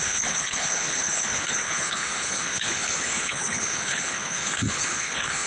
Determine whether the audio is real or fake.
fake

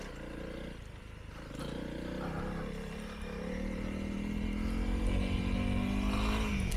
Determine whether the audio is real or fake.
real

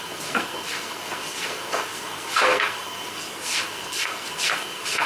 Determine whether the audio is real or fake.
fake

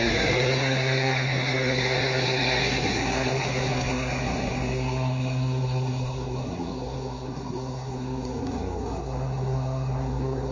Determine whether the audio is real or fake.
fake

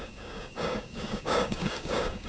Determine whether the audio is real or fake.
fake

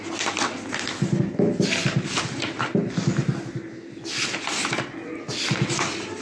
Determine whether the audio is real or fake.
real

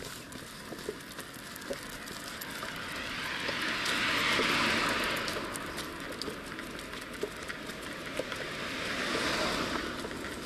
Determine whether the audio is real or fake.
real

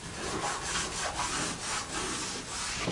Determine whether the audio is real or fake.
real